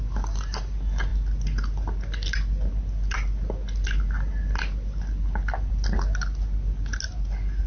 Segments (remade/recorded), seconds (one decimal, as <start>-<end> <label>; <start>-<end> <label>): 0.0-7.7 recorded